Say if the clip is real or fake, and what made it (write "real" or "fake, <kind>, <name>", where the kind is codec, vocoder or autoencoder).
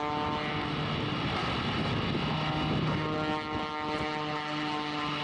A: real